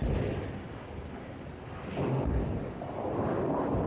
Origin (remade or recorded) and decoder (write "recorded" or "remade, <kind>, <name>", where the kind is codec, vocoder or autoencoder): recorded